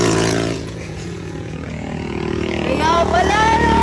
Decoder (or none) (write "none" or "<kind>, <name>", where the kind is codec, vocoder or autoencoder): vocoder, Vocos